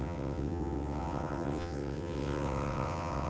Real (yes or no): no